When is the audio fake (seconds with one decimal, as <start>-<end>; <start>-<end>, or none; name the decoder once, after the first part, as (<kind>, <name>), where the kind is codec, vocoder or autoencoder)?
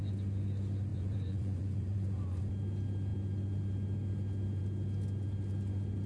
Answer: 0.9-2.4 (vocoder, Vocos)